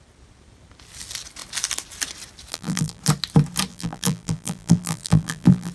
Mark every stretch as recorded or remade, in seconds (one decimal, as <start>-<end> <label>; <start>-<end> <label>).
0.0-2.5 recorded; 2.5-3.0 remade; 3.0-3.7 recorded; 3.7-5.7 remade